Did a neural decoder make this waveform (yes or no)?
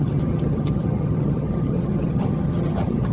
yes